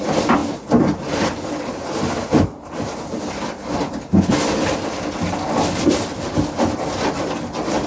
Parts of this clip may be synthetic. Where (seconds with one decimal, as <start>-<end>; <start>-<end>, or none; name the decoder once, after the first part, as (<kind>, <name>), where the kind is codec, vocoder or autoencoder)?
none